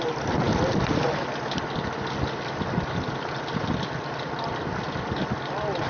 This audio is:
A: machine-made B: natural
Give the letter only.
B